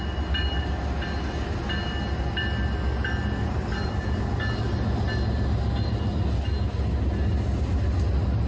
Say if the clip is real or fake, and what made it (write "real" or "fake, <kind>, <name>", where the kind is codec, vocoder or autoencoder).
real